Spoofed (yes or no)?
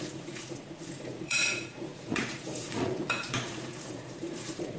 yes